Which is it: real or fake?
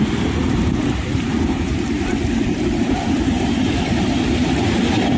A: fake